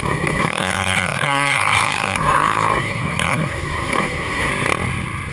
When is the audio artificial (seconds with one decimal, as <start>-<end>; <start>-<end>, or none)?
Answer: 0.0-4.5